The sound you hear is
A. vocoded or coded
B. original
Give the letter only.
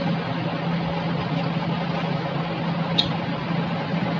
B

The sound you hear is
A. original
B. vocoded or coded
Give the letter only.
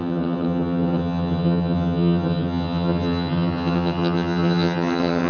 B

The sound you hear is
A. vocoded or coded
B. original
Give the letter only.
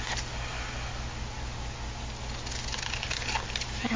B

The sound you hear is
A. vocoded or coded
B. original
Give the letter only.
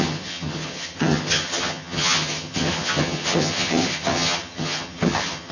A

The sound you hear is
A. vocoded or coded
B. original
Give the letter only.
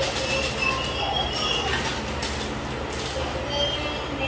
B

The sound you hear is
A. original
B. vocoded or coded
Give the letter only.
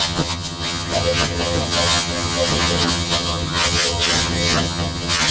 B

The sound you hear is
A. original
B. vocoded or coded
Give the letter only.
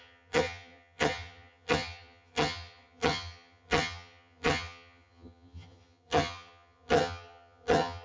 B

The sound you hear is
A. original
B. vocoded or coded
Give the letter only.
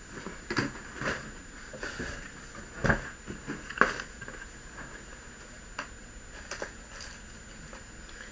A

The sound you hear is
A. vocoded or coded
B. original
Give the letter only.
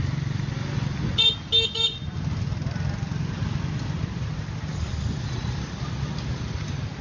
B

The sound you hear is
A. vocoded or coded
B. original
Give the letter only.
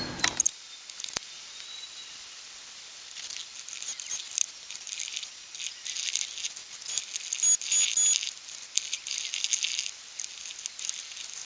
B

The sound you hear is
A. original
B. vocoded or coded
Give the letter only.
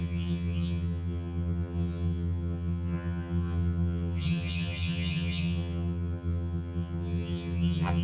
B